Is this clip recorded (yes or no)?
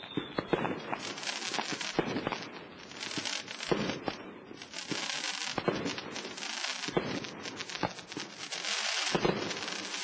yes